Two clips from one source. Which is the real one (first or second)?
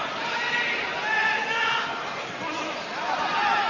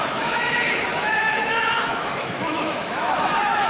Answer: first